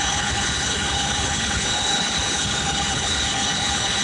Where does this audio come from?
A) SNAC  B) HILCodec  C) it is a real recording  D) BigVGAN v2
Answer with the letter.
B